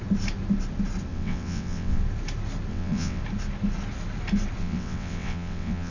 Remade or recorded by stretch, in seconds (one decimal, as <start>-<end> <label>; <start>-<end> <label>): 0.0-1.1 recorded; 1.1-2.0 remade; 2.0-2.7 recorded; 2.7-3.2 remade; 3.2-4.6 recorded; 4.6-5.9 remade